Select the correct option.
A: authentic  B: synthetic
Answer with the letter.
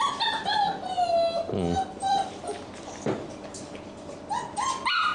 A